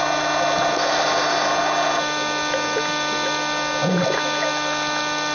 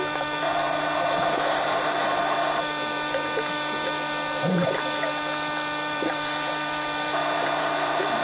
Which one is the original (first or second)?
first